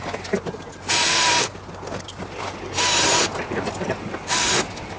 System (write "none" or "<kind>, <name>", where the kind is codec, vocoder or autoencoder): none